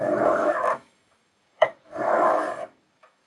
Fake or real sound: fake